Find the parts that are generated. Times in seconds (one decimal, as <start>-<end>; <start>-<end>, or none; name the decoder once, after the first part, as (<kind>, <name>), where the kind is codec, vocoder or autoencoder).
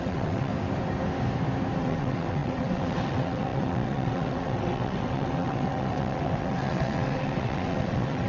0.0-0.5 (vocoder, WaveNeXt); 1.8-8.3